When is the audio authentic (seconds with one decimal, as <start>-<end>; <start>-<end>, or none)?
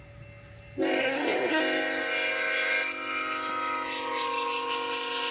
0.0-1.0; 1.6-5.3